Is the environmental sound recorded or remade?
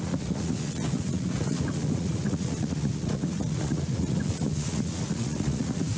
remade